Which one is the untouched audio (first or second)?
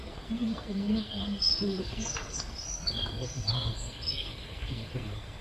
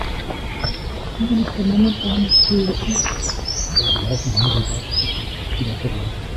second